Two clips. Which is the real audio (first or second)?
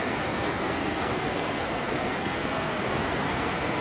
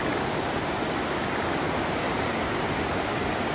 second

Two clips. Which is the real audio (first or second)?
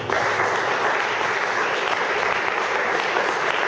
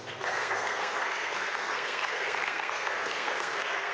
first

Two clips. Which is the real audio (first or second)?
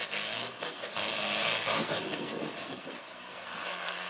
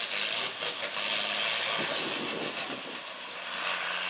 second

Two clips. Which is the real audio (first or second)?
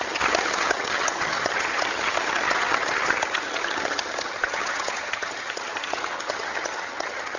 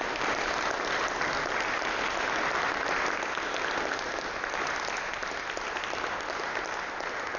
second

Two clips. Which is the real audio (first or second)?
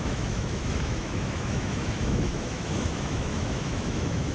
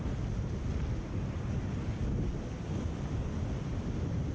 second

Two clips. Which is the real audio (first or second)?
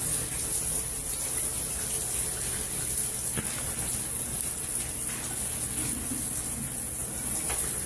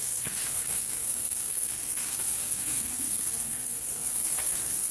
first